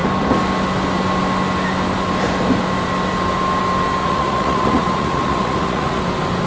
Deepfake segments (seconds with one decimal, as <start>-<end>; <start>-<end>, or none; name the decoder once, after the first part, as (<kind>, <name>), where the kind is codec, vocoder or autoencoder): 4.0-6.0 (vocoder, Vocos)